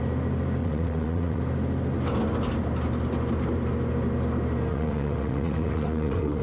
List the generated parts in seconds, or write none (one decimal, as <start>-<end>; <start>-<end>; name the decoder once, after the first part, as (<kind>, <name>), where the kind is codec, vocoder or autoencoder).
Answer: 0.6-1.4 (vocoder, WaveNeXt); 4.7-6.4